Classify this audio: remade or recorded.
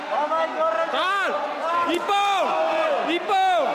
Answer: recorded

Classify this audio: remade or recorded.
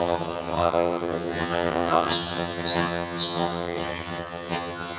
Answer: remade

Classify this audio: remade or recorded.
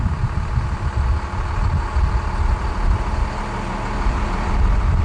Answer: recorded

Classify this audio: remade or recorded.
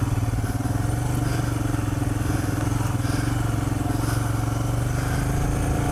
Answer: recorded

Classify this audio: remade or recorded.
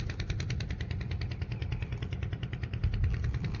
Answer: recorded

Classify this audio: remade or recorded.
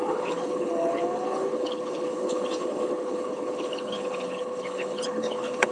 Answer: remade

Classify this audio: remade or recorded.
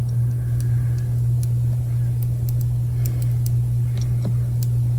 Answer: recorded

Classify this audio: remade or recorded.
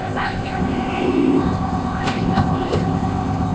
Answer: remade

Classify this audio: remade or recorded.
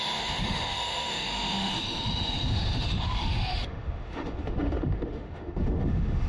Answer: remade